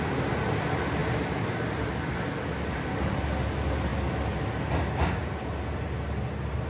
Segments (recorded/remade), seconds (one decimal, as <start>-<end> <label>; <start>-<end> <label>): 0.0-1.0 recorded; 1.0-1.9 remade; 1.9-6.7 recorded